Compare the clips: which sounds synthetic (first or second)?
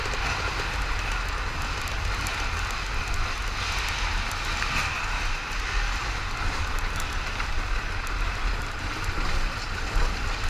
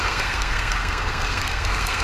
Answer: second